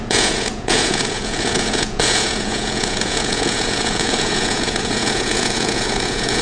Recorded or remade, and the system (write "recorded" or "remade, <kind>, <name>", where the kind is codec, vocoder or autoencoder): remade, vocoder, Vocos